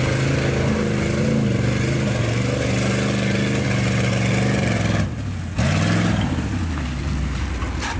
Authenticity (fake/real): real